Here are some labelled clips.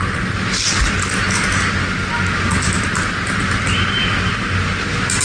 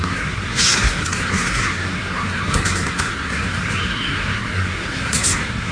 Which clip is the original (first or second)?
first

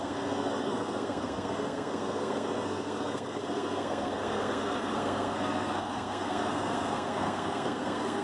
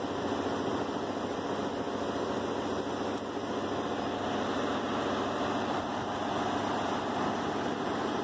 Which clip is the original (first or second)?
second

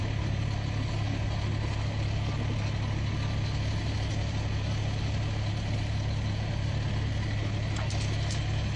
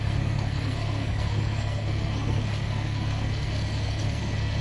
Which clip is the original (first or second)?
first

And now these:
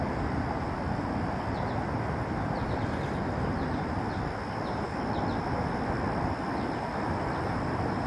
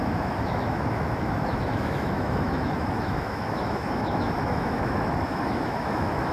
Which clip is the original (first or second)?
first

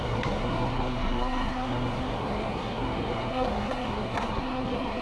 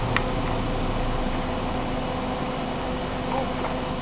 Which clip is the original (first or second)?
second